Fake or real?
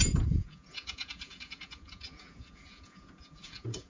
fake